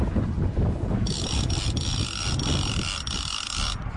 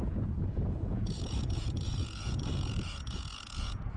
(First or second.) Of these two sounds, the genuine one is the first